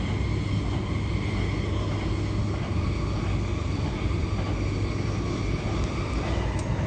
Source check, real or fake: real